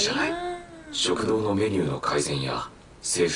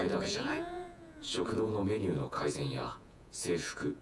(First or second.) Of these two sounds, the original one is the first